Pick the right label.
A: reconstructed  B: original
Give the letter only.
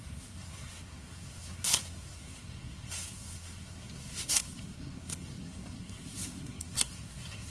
A